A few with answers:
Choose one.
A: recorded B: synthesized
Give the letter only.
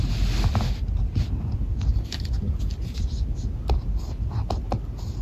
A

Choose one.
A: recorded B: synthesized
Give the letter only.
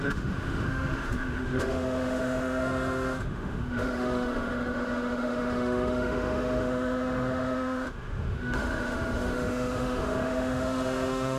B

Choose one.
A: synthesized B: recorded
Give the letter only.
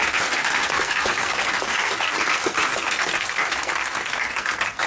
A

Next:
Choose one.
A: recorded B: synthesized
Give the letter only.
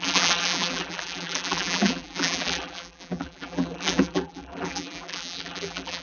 B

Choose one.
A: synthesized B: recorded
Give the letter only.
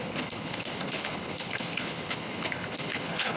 A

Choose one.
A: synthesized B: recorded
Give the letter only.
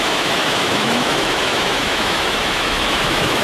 A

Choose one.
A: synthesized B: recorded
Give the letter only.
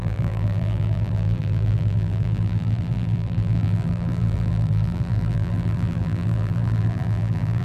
A